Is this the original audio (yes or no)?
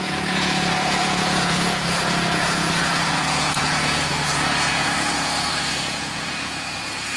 no